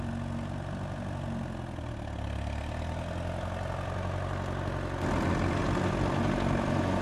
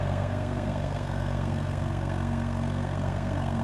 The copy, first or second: second